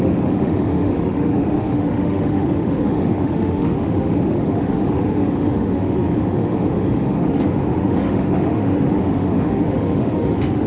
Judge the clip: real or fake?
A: fake